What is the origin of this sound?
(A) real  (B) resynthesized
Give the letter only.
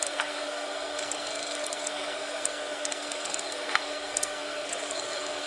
B